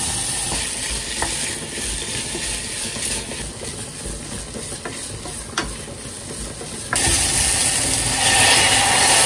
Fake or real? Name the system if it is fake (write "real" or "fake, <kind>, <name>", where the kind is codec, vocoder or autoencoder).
real